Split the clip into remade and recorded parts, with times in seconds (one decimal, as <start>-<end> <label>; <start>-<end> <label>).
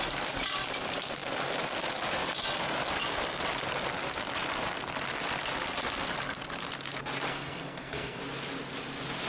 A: 0.0-7.3 recorded; 7.3-8.2 remade; 8.2-9.3 recorded